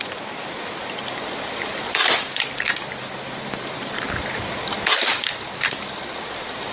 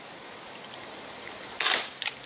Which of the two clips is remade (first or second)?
first